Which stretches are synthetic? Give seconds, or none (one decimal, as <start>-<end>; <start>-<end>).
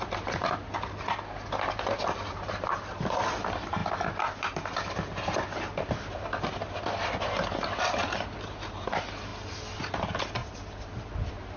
none